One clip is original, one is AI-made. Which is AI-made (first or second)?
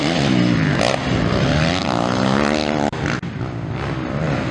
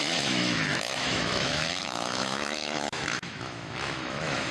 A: second